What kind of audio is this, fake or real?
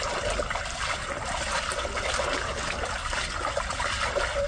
real